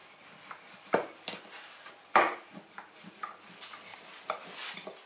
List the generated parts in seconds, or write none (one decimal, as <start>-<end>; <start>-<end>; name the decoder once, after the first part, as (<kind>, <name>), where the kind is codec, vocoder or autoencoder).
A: none